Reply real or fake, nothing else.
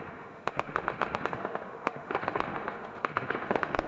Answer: fake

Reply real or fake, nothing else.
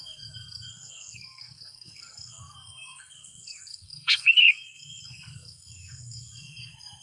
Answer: fake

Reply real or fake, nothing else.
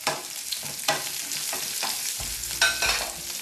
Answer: real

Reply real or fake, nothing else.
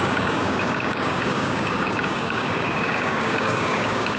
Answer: fake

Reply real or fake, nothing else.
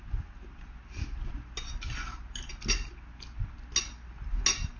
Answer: real